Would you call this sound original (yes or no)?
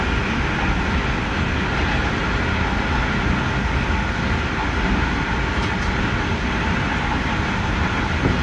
yes